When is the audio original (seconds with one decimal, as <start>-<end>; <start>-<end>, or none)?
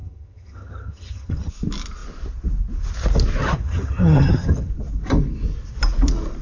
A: 1.5-3.4; 4.7-6.4